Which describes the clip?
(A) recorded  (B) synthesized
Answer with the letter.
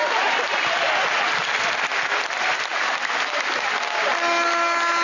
A